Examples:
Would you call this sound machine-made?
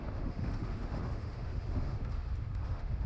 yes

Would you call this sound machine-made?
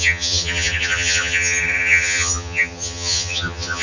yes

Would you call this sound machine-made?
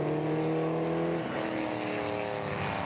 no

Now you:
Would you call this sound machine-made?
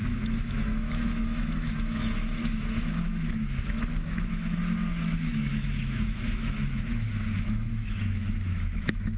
yes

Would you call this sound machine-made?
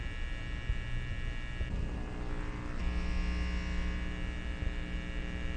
no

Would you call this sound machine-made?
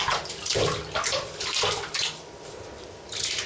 no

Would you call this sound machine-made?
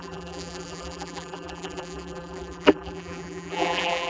yes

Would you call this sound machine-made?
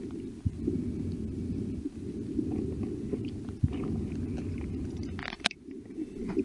no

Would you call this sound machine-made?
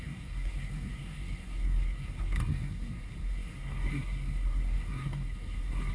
yes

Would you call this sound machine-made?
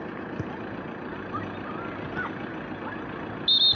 no